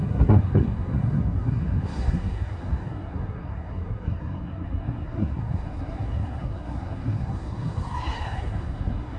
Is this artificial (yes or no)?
yes